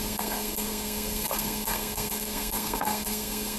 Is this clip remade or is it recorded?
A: remade